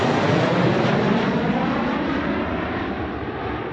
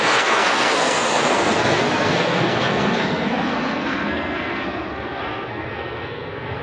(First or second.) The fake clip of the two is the second